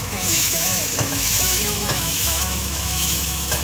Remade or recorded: remade